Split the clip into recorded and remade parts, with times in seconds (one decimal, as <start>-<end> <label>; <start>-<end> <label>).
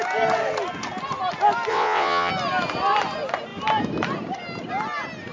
0.0-1.7 recorded; 1.7-2.3 remade; 2.3-5.3 recorded